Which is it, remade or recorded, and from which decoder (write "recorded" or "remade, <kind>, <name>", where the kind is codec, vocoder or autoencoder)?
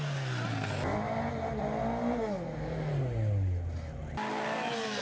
recorded